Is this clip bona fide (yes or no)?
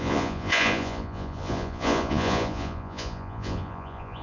no